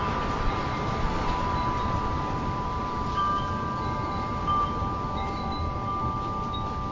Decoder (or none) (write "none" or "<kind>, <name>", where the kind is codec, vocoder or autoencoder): vocoder, BigVGAN v2